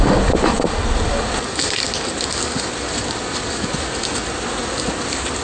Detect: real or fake real